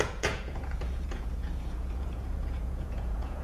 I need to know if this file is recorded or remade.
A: remade